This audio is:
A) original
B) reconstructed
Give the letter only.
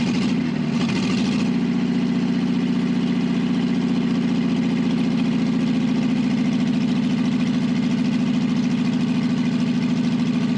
A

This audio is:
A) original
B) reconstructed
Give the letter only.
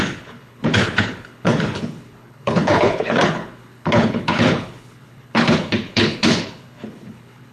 B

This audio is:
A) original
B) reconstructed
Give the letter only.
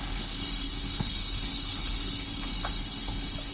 B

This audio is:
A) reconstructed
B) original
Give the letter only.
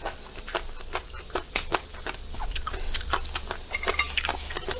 B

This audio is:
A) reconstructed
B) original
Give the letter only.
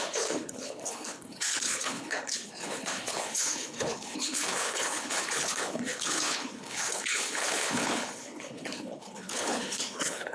A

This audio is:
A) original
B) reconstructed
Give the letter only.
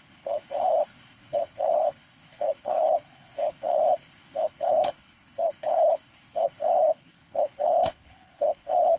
B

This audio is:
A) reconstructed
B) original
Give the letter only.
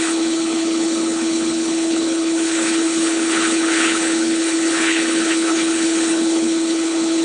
A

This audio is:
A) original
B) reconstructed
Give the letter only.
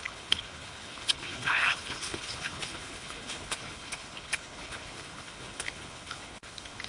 B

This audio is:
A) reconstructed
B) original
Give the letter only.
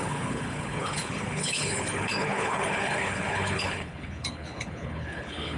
A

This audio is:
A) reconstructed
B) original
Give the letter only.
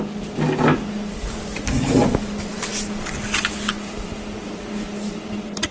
B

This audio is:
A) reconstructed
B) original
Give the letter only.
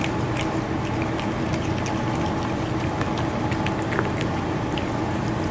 B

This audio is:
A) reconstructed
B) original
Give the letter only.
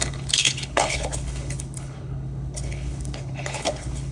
A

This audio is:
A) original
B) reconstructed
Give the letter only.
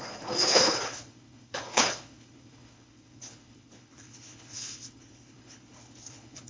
B